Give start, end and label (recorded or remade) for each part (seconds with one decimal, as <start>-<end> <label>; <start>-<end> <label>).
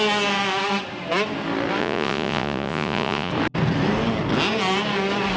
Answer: 0.0-1.8 recorded; 1.8-3.3 remade; 3.3-5.4 recorded